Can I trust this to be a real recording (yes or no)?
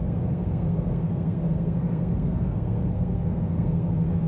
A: no